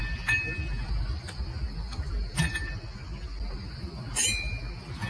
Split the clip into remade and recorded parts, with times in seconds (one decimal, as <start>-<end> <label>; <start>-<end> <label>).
0.0-5.1 recorded